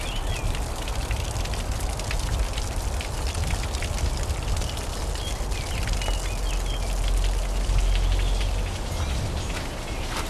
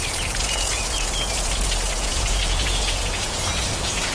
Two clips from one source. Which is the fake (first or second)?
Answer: second